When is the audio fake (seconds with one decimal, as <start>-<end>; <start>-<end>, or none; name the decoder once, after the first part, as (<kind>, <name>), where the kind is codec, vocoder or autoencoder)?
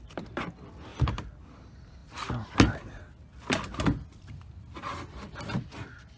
0.9-1.5 (vocoder, BigVGAN v2)